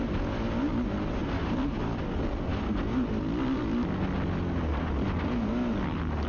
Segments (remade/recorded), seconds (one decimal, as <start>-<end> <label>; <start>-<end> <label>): 0.0-6.3 recorded